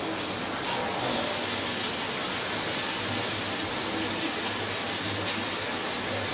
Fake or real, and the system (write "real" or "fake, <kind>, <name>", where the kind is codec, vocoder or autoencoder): real